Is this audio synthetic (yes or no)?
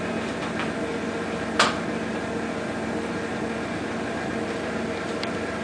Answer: no